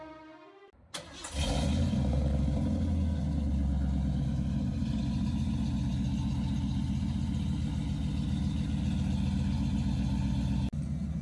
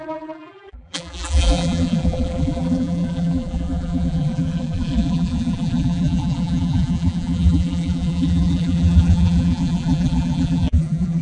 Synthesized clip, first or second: second